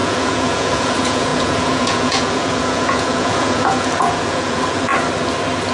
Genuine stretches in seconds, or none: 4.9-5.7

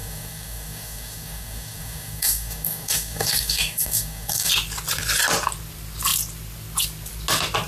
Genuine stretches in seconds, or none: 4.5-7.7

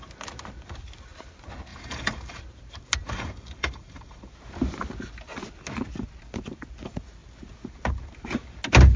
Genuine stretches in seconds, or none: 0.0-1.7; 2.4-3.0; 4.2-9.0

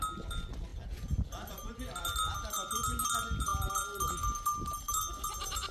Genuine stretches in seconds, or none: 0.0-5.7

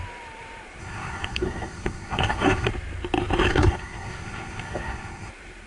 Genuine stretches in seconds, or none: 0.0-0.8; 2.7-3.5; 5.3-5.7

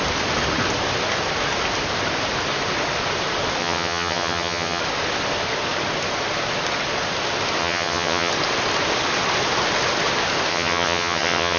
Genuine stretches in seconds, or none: 0.0-3.6; 4.8-7.6; 8.3-10.5

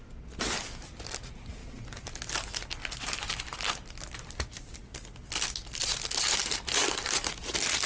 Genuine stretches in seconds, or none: 0.0-7.9